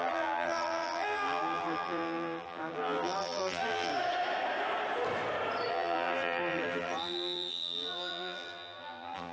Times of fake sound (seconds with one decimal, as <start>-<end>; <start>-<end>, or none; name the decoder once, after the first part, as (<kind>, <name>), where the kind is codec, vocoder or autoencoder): 0.0-3.9 (vocoder, BigVGAN v2); 5.7-9.3